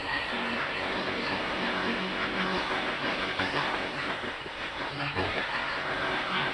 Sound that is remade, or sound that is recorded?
remade